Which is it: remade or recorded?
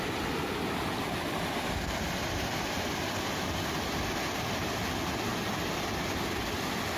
recorded